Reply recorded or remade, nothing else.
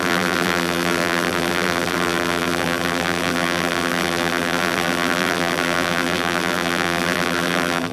remade